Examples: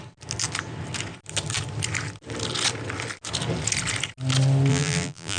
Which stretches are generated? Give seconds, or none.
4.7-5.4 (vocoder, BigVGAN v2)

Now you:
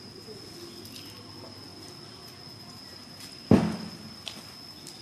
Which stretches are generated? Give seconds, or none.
none

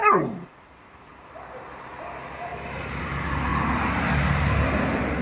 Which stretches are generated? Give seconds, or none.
none

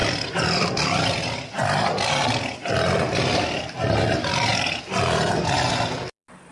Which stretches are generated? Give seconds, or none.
0.0-4.5 (vocoder, BigVGAN v2)

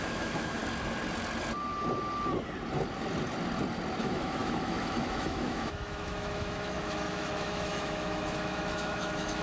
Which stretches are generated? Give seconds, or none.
0.0-0.6 (autoencoder, DAC-VAE); 4.0-9.4

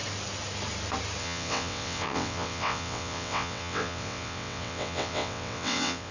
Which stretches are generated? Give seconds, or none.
1.2-6.1 (vocoder, WaveNeXt)

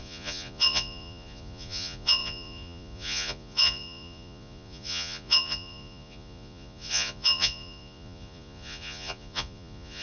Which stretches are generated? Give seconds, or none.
0.0-10.0 (vocoder, Vocos)